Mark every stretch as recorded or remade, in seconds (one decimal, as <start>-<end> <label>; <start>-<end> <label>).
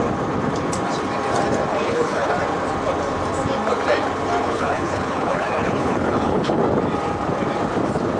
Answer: 0.0-1.7 recorded; 1.7-2.3 remade; 2.3-4.4 recorded; 4.4-6.6 remade; 6.6-8.2 recorded